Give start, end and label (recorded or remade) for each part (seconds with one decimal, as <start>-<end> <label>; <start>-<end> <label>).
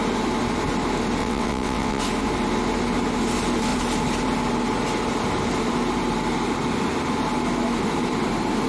0.0-1.2 recorded; 1.2-2.0 remade; 2.0-8.7 recorded